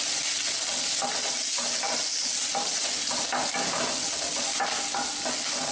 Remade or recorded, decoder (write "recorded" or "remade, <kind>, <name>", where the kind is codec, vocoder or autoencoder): recorded